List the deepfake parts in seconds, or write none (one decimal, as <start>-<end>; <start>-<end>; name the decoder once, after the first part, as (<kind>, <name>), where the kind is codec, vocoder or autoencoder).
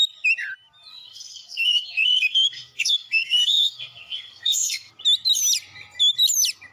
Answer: 0.9-4.9 (codec, SNAC)